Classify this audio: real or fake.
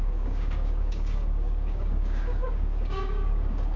fake